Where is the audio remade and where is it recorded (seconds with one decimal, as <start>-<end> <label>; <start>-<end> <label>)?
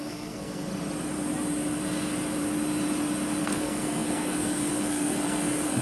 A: 0.0-0.7 remade; 0.7-3.4 recorded; 3.4-5.8 remade